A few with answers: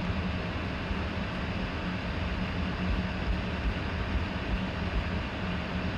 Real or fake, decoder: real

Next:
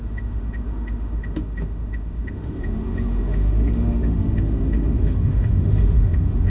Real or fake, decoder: fake, autoencoder, DAC-VAE